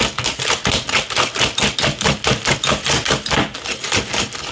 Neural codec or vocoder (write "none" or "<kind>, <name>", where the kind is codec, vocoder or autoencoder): none